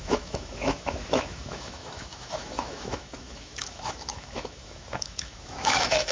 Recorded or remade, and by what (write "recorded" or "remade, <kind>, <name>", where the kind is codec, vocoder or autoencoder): remade, autoencoder, DAC-VAE